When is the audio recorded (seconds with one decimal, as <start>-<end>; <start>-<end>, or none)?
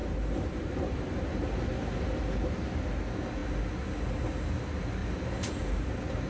1.6-5.0